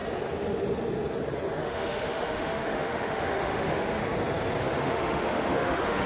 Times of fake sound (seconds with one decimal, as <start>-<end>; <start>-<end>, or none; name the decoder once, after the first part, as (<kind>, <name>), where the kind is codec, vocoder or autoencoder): 1.6-4.0 (autoencoder, DAC-VAE); 4.6-6.1

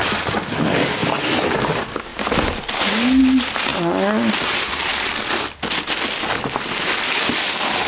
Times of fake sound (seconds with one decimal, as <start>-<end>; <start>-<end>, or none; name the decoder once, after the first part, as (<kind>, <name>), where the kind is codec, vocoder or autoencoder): none

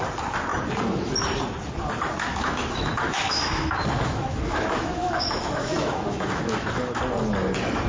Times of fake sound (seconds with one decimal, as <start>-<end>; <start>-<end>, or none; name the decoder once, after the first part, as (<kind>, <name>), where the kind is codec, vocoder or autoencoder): 2.3-7.0 (autoencoder, DAC-VAE)

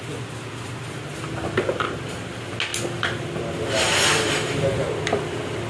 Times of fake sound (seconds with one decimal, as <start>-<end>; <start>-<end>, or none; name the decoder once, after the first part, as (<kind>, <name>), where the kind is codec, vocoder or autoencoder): none

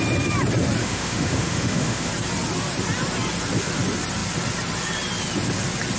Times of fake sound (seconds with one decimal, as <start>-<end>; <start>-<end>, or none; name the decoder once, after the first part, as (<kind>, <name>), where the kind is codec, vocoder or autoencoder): 0.8-2.1 (autoencoder, DAC-VAE)

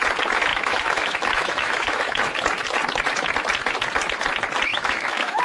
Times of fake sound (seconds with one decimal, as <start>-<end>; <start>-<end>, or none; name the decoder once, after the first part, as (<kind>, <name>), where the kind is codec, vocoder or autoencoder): 0.5-2.3 (autoencoder, DAC-VAE); 4.7-5.4